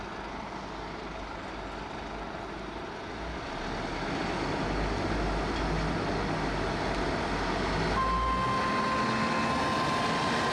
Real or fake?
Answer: real